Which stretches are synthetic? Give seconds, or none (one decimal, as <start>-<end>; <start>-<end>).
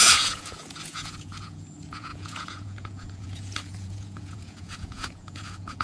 0.0-5.8